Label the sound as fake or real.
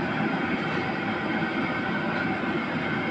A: real